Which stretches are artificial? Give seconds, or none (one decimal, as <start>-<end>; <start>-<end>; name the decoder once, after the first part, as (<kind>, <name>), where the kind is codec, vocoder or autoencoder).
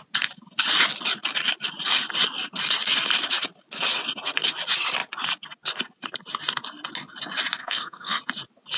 7.6-8.2 (codec, SNAC)